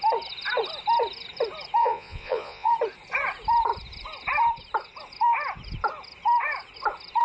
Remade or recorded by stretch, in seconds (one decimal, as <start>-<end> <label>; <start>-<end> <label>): 0.0-1.8 recorded; 1.8-2.7 remade; 2.7-7.2 recorded